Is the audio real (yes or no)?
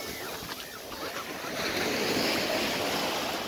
yes